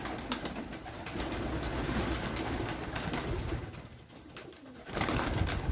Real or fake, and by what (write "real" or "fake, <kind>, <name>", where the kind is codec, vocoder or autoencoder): real